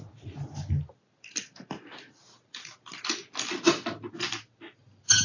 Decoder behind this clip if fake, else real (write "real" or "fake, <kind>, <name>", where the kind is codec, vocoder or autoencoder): real